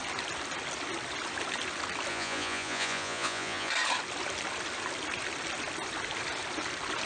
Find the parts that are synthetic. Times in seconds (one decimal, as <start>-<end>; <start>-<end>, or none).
2.1-3.7